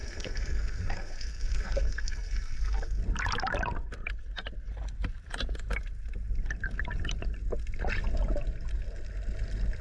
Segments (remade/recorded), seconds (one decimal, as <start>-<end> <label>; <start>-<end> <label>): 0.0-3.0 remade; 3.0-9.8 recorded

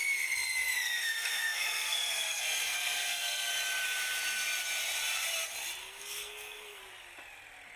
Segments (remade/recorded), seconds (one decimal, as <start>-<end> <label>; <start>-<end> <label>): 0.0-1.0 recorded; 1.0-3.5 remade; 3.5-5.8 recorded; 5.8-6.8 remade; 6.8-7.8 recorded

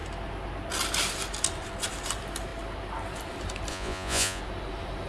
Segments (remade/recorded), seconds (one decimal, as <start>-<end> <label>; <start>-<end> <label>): 0.0-3.7 recorded; 3.7-4.4 remade; 4.4-5.1 recorded

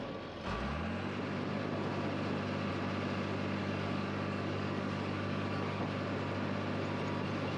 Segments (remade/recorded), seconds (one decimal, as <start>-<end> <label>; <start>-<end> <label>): 0.0-3.6 recorded; 3.6-5.8 remade; 5.8-7.6 recorded